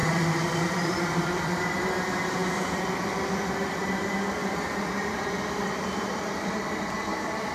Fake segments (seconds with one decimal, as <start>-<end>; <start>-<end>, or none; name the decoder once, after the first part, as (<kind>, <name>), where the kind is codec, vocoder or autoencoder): 0.0-1.6 (vocoder, BigVGAN v2); 3.8-7.5